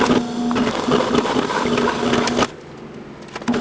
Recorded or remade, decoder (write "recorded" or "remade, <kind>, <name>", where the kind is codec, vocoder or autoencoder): recorded